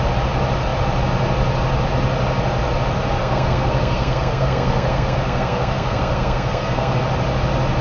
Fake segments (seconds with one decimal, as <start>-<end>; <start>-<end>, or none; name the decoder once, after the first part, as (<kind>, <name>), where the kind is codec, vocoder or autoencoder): 3.2-7.0 (codec, SNAC)